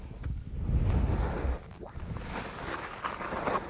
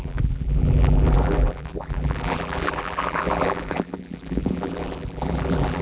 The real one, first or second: first